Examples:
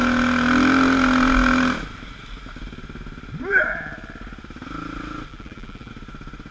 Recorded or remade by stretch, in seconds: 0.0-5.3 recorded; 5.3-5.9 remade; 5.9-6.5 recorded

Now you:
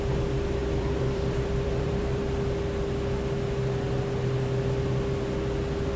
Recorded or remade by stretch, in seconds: 0.0-0.6 recorded; 0.6-2.2 remade; 2.2-6.0 recorded

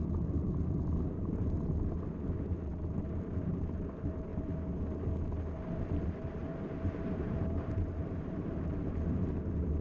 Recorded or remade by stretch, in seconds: 0.0-6.4 recorded; 6.4-8.5 remade; 8.5-9.8 recorded

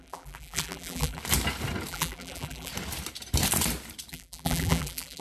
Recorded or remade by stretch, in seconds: 0.0-1.2 remade; 1.2-1.9 recorded; 1.9-2.7 remade; 2.7-4.1 recorded; 4.1-5.2 remade

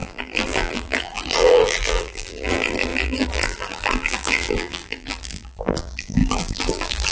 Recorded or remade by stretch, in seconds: 0.0-7.1 remade